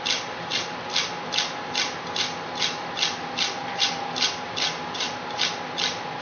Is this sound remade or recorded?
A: recorded